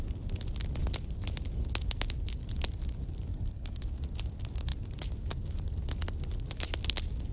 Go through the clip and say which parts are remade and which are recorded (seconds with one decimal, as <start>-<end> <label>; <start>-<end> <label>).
0.0-3.3 recorded; 3.3-3.8 remade; 3.8-7.3 recorded